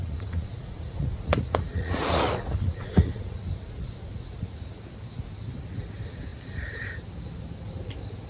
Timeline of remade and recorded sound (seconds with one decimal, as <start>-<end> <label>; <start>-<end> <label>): 0.0-4.8 remade; 4.8-8.3 recorded